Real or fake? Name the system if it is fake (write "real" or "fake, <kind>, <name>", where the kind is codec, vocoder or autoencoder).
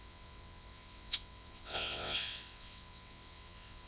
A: fake, vocoder, WaveNeXt